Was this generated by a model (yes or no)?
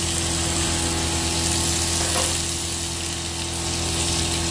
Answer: no